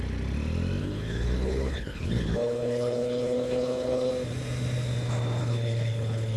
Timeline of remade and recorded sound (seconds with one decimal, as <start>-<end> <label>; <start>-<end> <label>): 0.0-0.8 recorded; 0.8-4.1 remade; 4.1-5.4 recorded; 5.4-6.4 remade